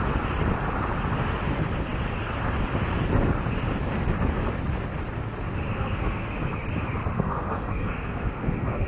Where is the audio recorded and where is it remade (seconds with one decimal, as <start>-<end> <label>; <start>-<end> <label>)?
0.0-5.7 recorded; 5.7-6.3 remade; 6.3-7.1 recorded; 7.1-8.9 remade